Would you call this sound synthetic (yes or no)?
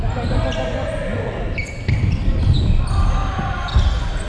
no